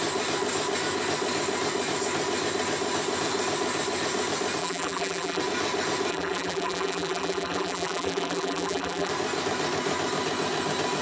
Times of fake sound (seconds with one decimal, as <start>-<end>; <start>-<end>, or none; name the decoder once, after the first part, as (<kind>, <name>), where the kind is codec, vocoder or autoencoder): 4.6-5.4 (vocoder, BigVGAN v2); 6.1-9.1